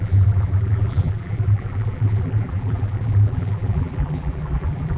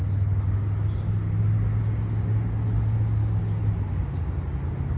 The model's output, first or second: first